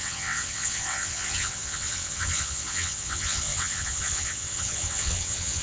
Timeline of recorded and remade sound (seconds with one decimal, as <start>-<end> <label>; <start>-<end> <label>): 0.0-5.6 remade